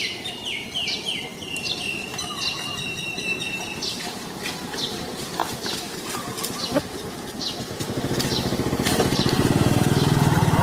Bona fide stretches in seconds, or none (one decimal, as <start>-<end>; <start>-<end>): none